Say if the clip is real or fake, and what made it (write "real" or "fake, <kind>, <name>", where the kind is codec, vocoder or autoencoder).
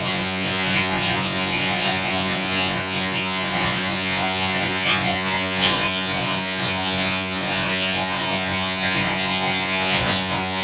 fake, vocoder, Vocos